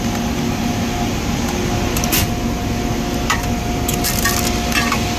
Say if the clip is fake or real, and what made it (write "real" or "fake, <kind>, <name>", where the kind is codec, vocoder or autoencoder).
real